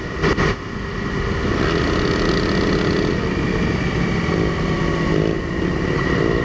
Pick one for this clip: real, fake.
real